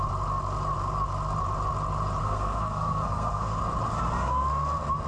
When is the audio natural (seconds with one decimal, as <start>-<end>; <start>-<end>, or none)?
0.0-2.2; 3.6-5.1